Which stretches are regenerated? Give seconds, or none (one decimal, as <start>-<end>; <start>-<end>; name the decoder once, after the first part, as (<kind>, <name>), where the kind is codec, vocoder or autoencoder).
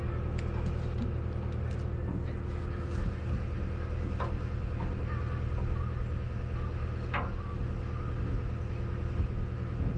none